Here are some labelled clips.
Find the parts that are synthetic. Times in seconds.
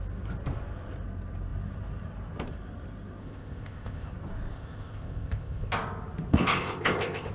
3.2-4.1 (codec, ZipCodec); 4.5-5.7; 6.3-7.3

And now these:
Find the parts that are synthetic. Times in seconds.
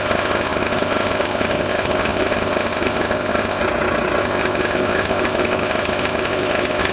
0.0-3.6 (codec, ZipCodec); 4.2-6.9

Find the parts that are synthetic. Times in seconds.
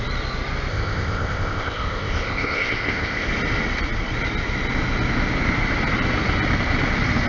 0.7-3.3 (codec, ZipCodec)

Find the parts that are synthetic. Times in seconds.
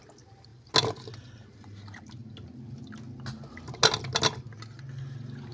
none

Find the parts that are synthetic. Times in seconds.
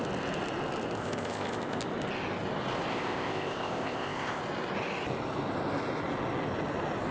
1.0-1.8 (codec, ZipCodec); 2.9-4.4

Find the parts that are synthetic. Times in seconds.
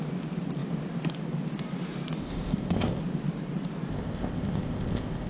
2.2-3.0 (codec, ZipCodec); 3.9-5.3